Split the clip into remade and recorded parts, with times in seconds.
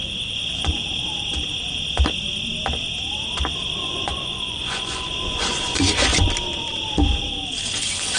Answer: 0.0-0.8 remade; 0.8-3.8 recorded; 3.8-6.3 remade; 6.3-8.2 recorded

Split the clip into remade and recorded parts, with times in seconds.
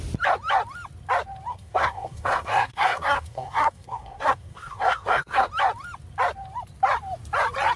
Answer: 0.0-1.5 recorded; 1.5-5.5 remade; 5.5-7.8 recorded